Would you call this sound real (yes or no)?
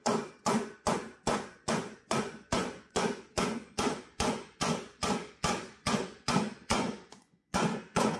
no